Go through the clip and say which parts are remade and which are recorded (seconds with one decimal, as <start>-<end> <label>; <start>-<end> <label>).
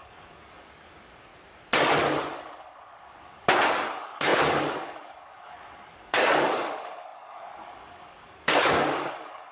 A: 0.0-1.3 remade; 1.3-3.2 recorded; 3.2-9.5 remade